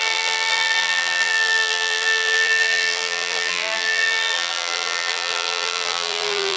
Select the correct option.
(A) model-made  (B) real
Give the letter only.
A